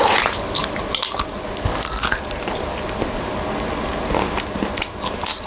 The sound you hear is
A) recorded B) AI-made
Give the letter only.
A